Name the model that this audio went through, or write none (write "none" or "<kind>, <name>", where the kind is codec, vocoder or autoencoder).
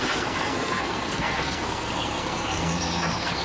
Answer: codec, SNAC